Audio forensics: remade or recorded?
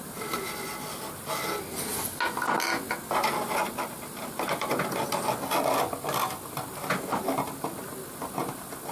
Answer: recorded